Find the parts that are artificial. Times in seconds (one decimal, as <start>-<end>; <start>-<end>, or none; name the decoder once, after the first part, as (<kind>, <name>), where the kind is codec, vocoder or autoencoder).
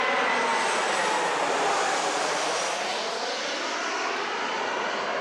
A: none